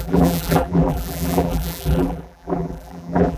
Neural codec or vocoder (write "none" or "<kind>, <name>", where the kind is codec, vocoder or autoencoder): vocoder, BigVGAN v2